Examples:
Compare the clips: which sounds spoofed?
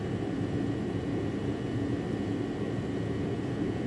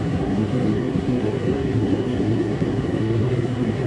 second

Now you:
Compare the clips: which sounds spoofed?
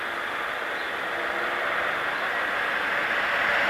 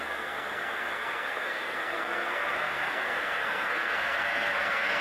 second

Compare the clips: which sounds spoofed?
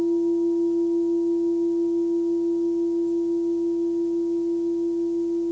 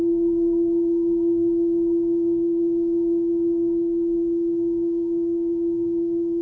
second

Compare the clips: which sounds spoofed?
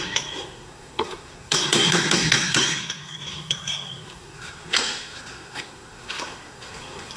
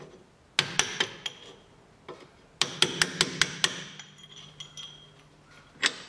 first